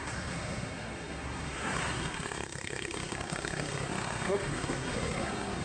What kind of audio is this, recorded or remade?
remade